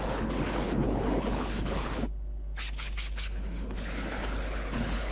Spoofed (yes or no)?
yes